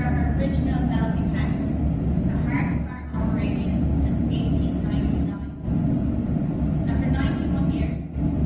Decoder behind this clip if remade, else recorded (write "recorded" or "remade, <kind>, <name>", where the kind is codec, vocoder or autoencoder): recorded